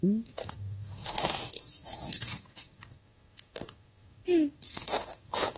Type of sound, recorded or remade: remade